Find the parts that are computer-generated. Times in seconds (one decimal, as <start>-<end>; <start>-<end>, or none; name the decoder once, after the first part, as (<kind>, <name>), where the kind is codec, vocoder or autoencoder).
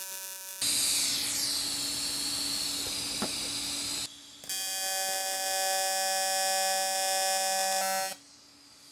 none